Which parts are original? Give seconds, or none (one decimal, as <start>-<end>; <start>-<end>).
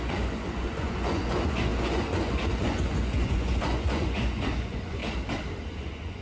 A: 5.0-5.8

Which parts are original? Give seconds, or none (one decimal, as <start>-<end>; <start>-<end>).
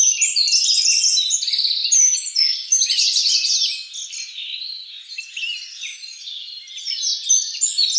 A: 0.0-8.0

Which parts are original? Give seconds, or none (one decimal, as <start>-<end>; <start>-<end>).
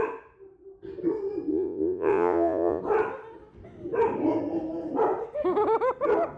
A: 0.0-1.5; 2.8-6.4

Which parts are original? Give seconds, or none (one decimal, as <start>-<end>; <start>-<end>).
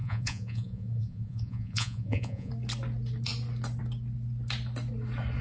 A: 2.5-5.4